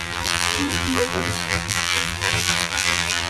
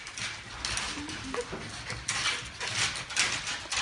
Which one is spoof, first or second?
first